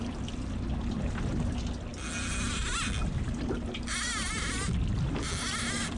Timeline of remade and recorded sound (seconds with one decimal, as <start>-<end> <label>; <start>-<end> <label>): 0.0-6.0 recorded